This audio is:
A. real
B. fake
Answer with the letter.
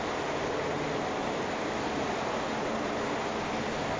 A